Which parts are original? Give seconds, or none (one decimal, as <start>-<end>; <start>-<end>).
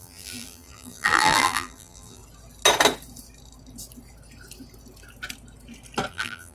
2.2-6.1